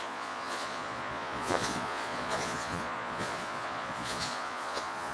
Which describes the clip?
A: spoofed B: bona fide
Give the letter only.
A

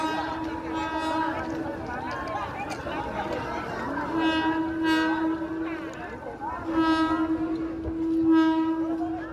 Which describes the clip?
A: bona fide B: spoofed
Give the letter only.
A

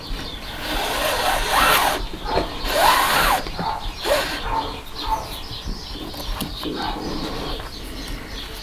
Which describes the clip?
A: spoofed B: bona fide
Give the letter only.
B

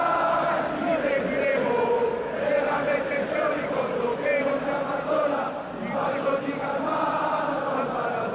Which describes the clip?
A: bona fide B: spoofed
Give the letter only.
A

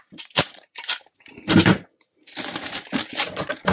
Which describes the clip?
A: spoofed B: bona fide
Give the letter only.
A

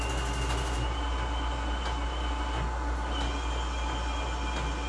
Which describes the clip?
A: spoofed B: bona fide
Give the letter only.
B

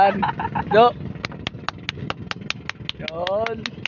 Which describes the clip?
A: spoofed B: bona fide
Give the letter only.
B